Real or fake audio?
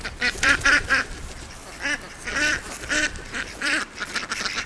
fake